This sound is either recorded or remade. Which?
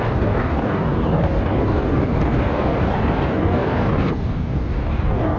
remade